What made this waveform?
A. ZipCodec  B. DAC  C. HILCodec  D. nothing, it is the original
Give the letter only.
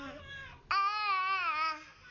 D